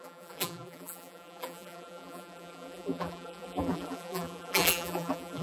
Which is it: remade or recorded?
remade